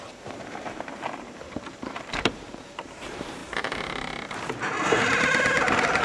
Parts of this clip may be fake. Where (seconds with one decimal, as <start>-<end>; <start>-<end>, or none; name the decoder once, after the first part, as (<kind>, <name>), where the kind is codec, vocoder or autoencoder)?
0.0-6.0 (vocoder, BigVGAN v2)